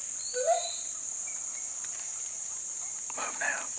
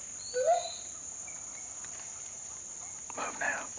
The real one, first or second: second